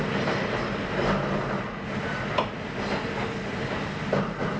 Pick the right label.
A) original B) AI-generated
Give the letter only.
A